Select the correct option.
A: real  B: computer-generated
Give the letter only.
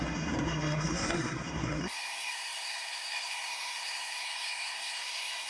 B